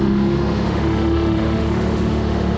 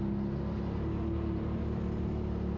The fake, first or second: first